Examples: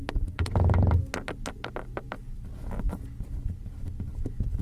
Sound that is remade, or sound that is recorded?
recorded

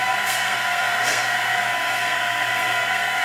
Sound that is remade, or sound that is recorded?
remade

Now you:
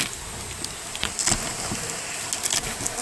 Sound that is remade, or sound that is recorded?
recorded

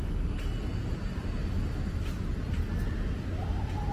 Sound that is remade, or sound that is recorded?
recorded